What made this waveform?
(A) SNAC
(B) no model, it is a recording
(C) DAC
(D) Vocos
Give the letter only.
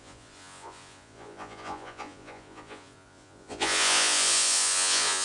D